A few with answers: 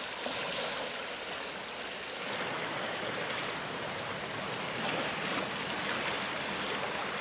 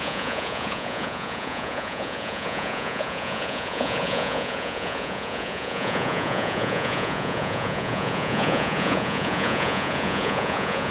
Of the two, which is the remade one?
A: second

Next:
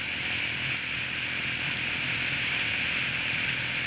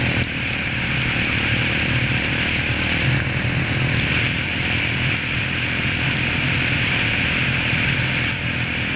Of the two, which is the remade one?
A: second